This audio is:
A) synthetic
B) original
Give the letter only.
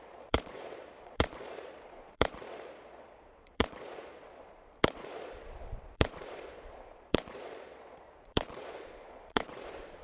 A